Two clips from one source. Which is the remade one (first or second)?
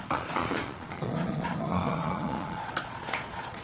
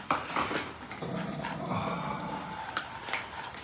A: first